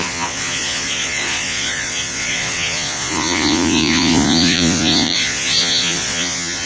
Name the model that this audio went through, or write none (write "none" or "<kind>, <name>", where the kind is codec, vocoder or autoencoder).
vocoder, Vocos